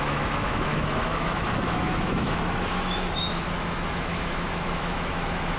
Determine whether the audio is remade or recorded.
remade